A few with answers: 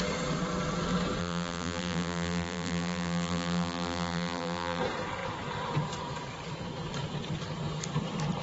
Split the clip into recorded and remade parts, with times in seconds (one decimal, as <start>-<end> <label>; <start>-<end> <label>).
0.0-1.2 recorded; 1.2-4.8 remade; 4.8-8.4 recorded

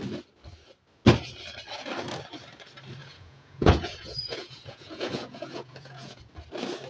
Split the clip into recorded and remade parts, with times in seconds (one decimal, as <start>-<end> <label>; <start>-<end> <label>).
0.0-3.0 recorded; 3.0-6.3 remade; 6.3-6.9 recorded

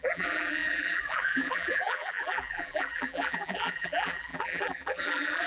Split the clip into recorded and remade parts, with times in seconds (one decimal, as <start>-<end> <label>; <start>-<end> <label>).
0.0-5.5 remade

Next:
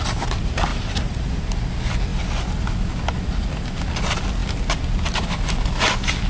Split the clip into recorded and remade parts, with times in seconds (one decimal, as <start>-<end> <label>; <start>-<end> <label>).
0.0-0.7 recorded; 0.7-1.3 remade; 1.3-6.3 recorded

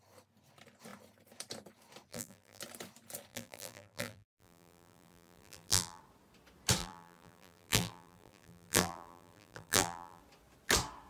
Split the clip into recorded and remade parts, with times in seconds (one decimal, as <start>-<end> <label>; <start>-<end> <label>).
0.0-2.1 recorded; 2.1-2.6 remade; 2.6-3.3 recorded; 3.3-6.0 remade; 6.0-6.8 recorded; 6.8-10.2 remade; 10.2-11.1 recorded

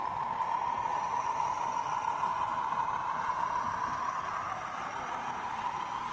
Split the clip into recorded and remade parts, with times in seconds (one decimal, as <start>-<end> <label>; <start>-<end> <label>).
0.0-2.3 recorded; 2.3-6.1 remade

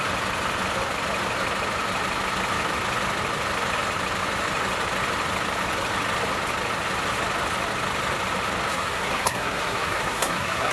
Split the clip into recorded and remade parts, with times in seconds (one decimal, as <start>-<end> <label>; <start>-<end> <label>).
0.0-8.7 recorded; 8.7-10.7 remade